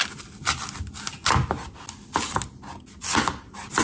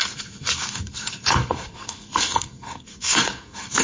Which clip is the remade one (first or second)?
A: second